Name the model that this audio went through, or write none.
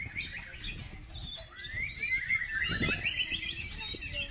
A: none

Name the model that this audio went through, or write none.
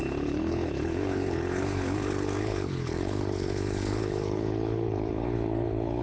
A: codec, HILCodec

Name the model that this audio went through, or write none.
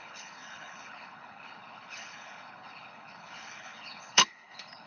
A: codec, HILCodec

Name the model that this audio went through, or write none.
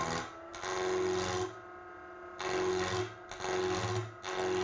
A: none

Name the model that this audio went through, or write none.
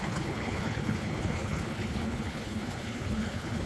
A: codec, HILCodec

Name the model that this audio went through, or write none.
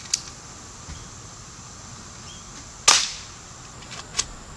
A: none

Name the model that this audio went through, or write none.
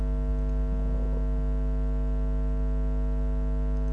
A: none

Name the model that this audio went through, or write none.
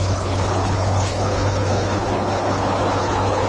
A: codec, HILCodec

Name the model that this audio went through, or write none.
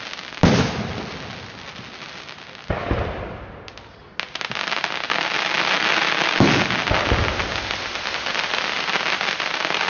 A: none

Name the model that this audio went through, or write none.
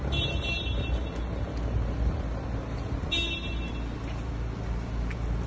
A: none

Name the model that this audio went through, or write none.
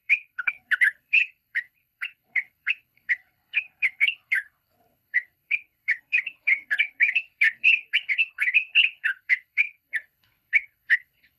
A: codec, HILCodec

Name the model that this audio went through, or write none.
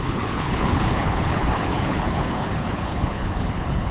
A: codec, HILCodec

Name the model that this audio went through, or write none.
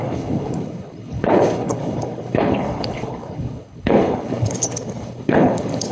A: codec, HILCodec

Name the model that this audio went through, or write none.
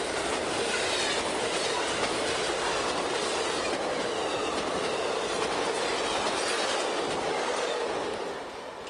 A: none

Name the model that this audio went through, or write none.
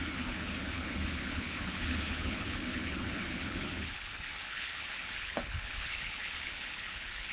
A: codec, HILCodec